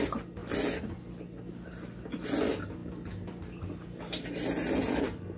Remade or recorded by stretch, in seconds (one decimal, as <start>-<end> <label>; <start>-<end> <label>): 0.0-5.4 recorded